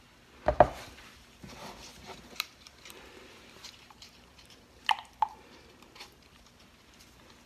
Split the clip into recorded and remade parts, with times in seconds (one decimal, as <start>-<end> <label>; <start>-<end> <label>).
0.0-1.9 recorded; 1.9-5.8 remade; 5.8-7.5 recorded